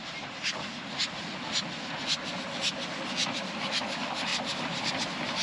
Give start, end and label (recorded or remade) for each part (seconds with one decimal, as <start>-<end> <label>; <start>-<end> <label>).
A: 0.0-1.0 remade; 1.0-4.3 recorded; 4.3-4.9 remade; 4.9-5.4 recorded

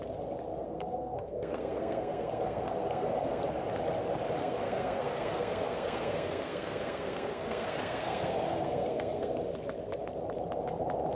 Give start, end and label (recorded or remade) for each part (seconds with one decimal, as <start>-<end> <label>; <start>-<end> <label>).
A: 0.0-0.6 recorded; 0.6-3.4 remade; 3.4-4.4 recorded; 4.4-9.4 remade; 9.4-11.2 recorded

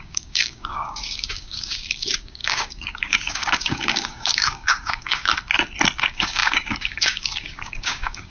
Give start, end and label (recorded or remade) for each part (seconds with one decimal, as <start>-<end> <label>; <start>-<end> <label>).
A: 0.0-5.3 remade; 5.3-6.0 recorded; 6.0-8.3 remade

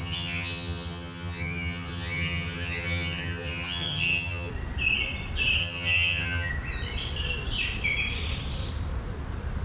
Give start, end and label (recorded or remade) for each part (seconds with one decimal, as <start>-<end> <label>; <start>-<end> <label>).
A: 0.0-4.5 remade; 4.5-5.6 recorded; 5.6-6.5 remade; 6.5-9.6 recorded

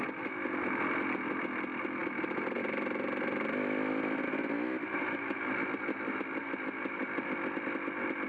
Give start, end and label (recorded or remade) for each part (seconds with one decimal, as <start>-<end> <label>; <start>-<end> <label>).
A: 0.0-8.3 recorded

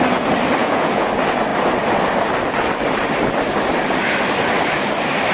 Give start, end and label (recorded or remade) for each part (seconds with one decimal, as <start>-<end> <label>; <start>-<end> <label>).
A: 0.0-0.6 recorded; 0.6-1.1 remade; 1.1-5.3 recorded